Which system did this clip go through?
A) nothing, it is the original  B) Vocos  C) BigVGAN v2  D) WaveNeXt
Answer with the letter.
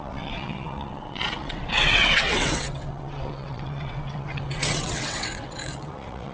D